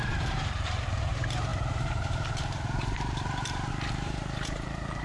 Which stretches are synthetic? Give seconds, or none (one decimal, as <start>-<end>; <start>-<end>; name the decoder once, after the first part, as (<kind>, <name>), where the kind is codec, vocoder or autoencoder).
0.0-5.0 (vocoder, BigVGAN v2)

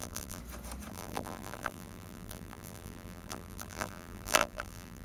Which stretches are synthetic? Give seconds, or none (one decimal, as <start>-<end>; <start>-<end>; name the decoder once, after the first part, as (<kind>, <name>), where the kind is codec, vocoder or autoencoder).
0.0-0.4 (vocoder, BigVGAN v2); 0.9-5.0

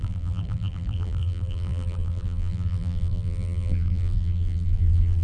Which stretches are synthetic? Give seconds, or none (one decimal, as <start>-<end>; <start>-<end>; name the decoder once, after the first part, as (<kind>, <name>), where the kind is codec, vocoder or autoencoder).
0.0-5.2 (vocoder, BigVGAN v2)